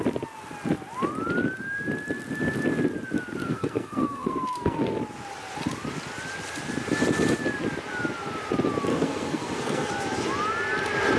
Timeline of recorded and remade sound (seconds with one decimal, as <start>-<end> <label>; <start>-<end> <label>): 0.0-3.4 recorded; 3.4-4.8 remade; 4.8-8.9 recorded; 8.9-9.9 remade; 9.9-11.2 recorded